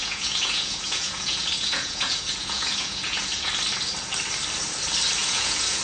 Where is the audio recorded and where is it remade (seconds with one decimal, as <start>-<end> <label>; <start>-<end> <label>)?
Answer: 0.0-3.5 remade; 3.5-5.2 recorded; 5.2-5.8 remade